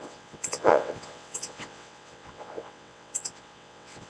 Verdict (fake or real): fake